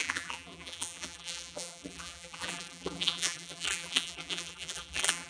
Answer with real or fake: fake